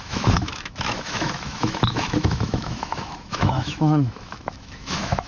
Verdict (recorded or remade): remade